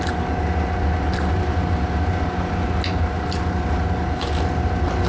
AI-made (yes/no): no